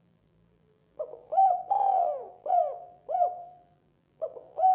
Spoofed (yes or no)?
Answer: yes